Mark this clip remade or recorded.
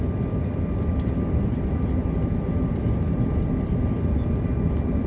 recorded